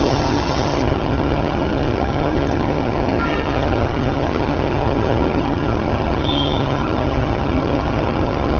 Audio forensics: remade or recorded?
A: remade